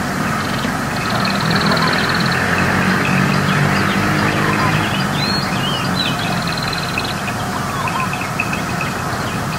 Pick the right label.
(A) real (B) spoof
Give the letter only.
A